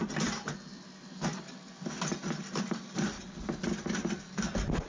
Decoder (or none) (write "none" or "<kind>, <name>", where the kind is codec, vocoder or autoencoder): none